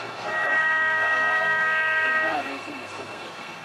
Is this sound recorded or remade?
remade